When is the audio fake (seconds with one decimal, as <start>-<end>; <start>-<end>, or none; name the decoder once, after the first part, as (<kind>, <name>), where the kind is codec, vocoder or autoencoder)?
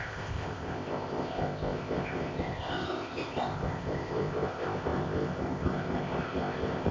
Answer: 0.0-6.9 (codec, ZipCodec)